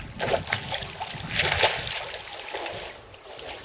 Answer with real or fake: real